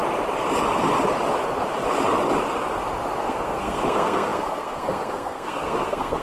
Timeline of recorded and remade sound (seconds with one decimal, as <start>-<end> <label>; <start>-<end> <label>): 0.0-3.2 recorded; 3.2-6.2 remade